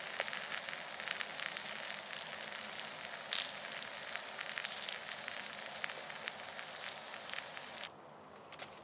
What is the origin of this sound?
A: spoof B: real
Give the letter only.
B